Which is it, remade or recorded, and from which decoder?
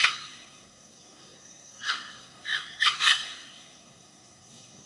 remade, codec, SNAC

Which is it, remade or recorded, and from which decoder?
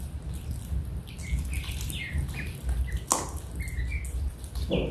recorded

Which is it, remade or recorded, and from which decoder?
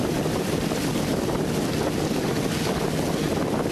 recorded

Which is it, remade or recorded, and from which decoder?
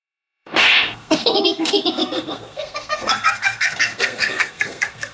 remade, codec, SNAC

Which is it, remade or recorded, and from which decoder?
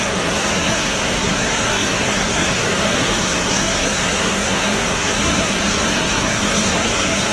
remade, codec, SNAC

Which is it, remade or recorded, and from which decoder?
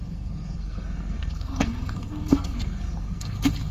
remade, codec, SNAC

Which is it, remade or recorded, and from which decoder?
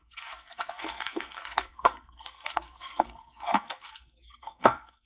remade, codec, SNAC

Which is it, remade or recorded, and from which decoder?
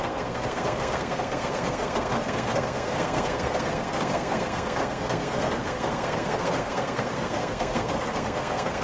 remade, codec, SNAC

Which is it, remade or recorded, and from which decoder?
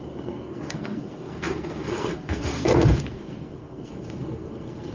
remade, codec, SNAC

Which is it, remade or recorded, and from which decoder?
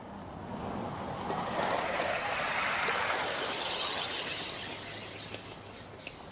recorded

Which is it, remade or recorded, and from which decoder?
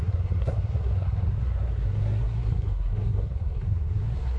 remade, codec, SNAC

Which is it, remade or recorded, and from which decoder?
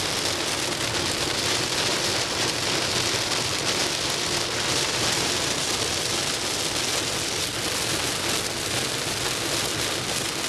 recorded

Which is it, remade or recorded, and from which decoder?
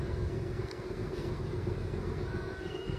remade, codec, SNAC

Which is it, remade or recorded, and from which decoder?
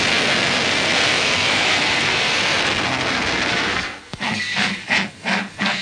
remade, codec, SNAC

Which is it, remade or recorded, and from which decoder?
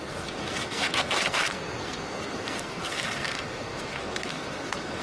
remade, codec, SNAC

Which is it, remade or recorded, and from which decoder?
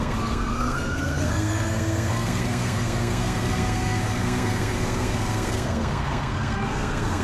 remade, codec, SNAC